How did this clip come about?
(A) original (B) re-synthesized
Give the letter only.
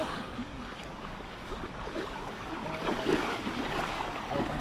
B